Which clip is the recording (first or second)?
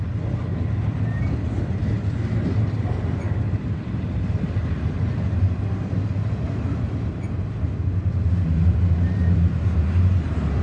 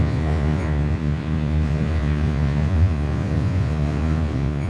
first